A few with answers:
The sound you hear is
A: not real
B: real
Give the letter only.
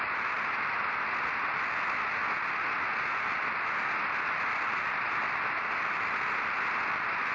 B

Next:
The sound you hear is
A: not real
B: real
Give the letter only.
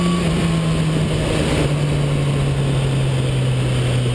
B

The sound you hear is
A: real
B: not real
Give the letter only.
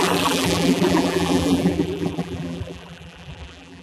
B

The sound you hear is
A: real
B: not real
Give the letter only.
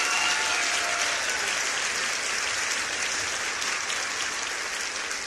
A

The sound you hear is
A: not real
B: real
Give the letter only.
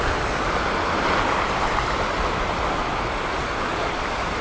B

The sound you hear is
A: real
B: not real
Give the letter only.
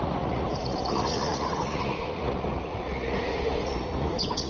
B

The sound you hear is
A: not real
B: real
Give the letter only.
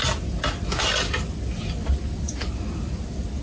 B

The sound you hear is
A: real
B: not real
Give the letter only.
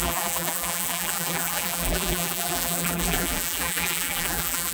B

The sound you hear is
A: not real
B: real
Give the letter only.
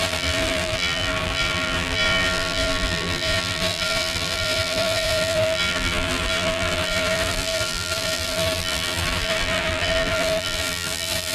A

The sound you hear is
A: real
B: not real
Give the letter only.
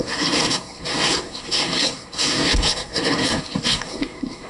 B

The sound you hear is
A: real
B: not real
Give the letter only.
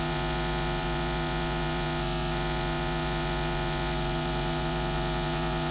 B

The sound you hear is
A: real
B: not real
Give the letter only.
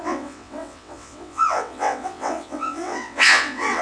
B